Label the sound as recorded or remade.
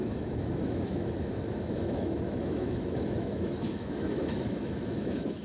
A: remade